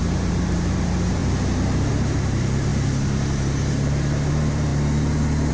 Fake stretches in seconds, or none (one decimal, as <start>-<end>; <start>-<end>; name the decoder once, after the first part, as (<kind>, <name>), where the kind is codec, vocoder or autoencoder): 0.0-1.2 (vocoder, BigVGAN v2); 1.9-4.7